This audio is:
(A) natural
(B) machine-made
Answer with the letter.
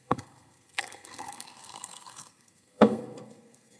B